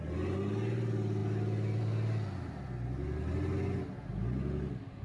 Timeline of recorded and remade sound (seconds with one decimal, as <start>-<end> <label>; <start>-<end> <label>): 0.0-5.0 recorded